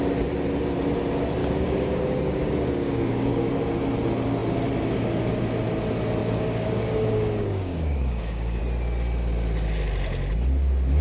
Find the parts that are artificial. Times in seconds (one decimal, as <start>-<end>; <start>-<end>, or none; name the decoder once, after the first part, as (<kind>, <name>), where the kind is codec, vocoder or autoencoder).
1.4-3.5 (codec, DAC); 6.2-8.6